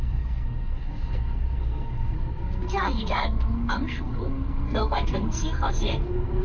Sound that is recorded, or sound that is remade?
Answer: remade